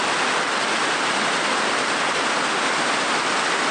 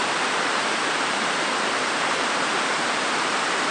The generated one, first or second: second